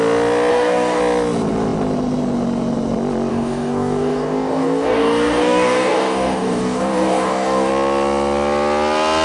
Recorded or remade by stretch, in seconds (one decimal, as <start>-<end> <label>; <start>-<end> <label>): 0.0-0.5 recorded; 0.5-1.0 remade; 1.0-3.3 recorded; 3.3-7.7 remade; 7.7-9.2 recorded